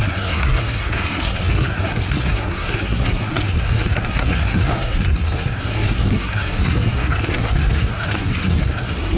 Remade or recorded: remade